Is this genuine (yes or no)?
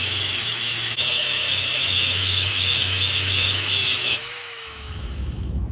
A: no